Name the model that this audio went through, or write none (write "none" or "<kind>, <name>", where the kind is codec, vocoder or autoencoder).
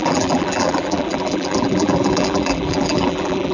vocoder, BigVGAN v2